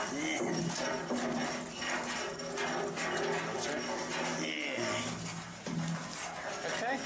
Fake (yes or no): no